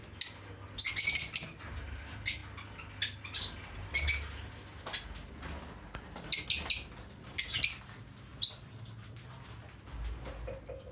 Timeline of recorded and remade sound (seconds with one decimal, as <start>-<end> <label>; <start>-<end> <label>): 0.0-8.3 recorded; 8.3-8.8 remade; 8.8-10.9 recorded